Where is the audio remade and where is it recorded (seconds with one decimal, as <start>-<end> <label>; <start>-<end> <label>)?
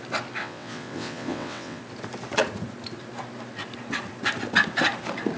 0.0-0.4 recorded; 0.4-1.8 remade; 1.8-5.4 recorded